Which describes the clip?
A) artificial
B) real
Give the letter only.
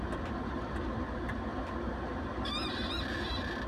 B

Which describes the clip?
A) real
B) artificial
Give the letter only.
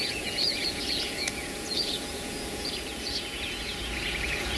B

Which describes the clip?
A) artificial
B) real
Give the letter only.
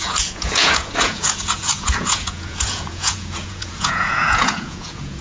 A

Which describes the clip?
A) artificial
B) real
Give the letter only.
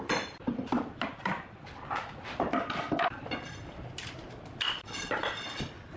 B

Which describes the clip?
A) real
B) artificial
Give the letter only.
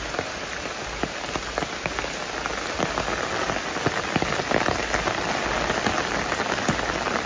A